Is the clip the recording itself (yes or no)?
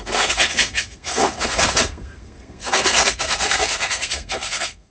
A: no